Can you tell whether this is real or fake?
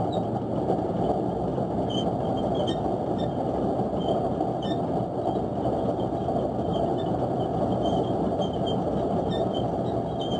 real